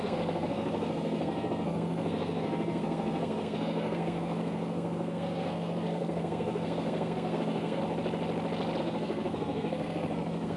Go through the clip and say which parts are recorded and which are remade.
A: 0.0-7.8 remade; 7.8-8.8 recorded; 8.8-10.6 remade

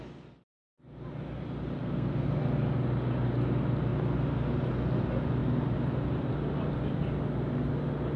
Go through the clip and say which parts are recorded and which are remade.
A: 0.0-1.8 recorded; 1.8-2.3 remade; 2.3-8.2 recorded

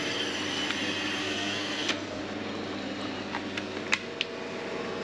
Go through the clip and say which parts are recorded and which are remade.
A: 0.0-1.2 recorded; 1.2-2.2 remade; 2.2-5.0 recorded